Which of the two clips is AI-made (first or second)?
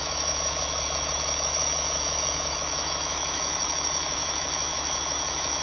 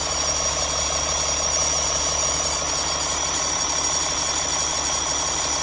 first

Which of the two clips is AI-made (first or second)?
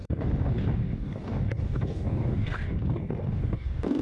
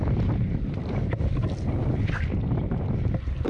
first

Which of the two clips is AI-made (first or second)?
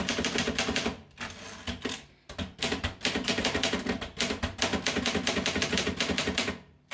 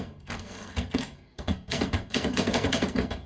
second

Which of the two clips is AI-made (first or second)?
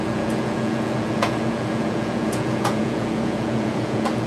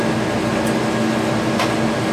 first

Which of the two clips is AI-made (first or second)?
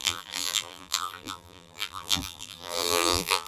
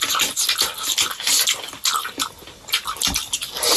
first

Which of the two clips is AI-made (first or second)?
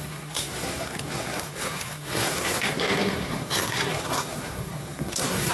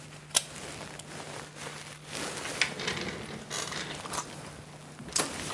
first